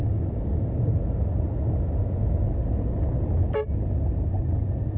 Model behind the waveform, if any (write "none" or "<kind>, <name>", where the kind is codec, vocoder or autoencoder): none